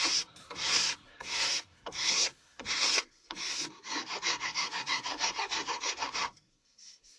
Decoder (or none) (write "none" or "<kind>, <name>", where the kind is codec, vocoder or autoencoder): codec, SNAC